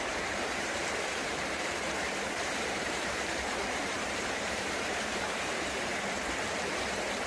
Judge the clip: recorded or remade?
remade